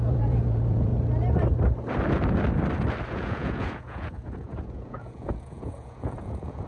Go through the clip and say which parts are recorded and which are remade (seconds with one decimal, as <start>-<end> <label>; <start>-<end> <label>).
0.0-0.9 remade; 0.9-3.1 recorded; 3.1-6.7 remade